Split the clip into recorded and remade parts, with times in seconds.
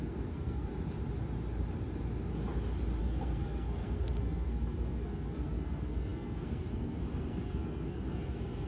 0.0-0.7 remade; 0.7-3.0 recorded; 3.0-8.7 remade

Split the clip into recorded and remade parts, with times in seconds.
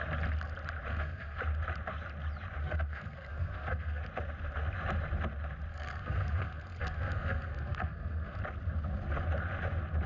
0.0-0.9 recorded; 0.9-1.4 remade; 1.4-2.6 recorded; 2.6-4.0 remade; 4.0-5.7 recorded; 5.7-8.4 remade; 8.4-10.1 recorded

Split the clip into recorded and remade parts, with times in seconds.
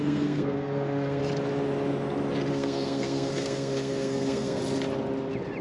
0.0-1.2 remade; 1.2-2.5 recorded; 2.5-4.6 remade; 4.6-5.6 recorded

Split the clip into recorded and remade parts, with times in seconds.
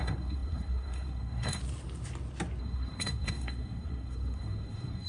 0.0-1.6 remade; 1.6-2.6 recorded; 2.6-5.1 remade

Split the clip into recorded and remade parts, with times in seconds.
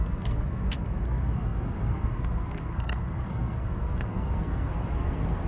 0.0-5.5 remade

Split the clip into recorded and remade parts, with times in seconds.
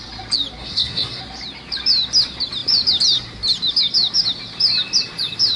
0.0-0.6 recorded; 0.6-1.2 remade; 1.2-5.6 recorded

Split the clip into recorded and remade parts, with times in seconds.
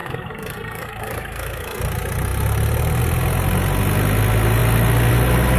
0.0-1.8 remade; 1.8-5.6 recorded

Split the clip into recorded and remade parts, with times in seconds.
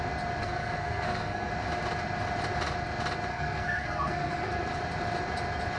0.0-0.4 recorded; 0.4-1.5 remade; 1.5-3.3 recorded; 3.3-4.8 remade; 4.8-5.8 recorded